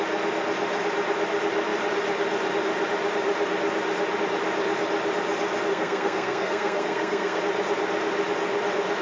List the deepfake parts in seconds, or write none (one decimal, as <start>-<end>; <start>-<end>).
5.7-7.4